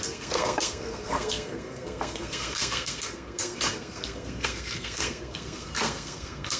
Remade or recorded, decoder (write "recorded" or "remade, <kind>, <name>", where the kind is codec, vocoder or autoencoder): remade, codec, SNAC